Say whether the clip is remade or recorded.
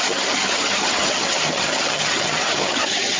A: remade